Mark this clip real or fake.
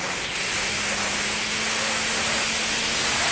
real